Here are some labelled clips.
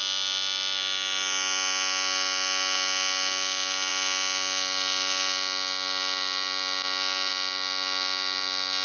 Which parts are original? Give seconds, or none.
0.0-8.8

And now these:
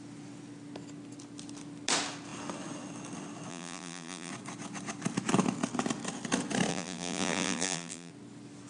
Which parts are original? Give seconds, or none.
0.0-3.5; 4.3-6.7; 8.1-8.7